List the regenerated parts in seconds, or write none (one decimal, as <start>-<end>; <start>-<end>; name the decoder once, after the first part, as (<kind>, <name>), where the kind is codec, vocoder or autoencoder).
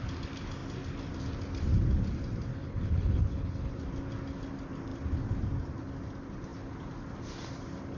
2.5-3.7 (codec, HILCodec)